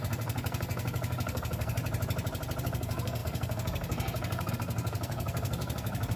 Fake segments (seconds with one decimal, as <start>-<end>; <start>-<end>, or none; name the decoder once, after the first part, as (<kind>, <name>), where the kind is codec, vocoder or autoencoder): 0.0-1.8 (codec, SNAC); 2.6-6.2